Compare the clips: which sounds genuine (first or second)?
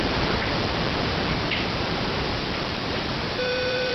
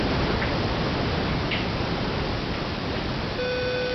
second